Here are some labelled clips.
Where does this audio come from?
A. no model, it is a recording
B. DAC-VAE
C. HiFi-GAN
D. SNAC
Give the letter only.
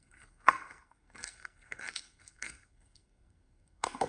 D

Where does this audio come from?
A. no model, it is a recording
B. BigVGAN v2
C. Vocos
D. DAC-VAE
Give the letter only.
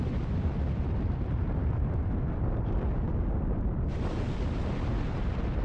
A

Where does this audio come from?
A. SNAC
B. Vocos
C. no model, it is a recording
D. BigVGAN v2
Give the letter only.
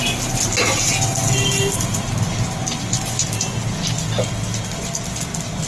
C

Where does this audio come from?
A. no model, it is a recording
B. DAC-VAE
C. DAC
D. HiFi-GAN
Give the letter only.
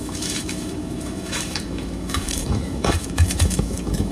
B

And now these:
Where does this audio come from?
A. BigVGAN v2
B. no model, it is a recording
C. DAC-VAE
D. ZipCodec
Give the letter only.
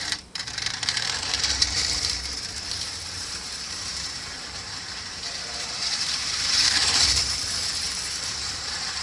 A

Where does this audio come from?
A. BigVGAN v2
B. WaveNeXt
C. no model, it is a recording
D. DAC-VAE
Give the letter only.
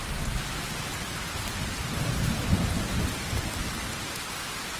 C